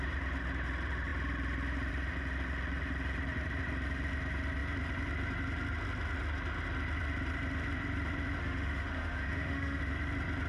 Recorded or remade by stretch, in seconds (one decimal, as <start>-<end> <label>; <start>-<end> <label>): 0.0-8.4 recorded; 8.4-9.8 remade; 9.8-10.5 recorded